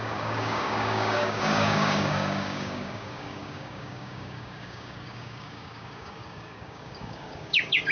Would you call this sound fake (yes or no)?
yes